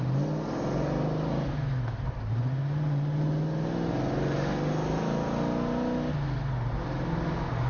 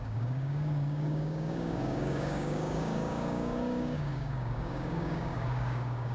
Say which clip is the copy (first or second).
second